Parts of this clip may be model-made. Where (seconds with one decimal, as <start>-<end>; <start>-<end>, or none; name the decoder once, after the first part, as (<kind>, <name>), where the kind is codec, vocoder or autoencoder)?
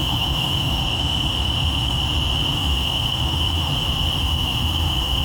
0.0-2.0 (autoencoder, DAC-VAE); 2.6-3.7; 4.2-5.2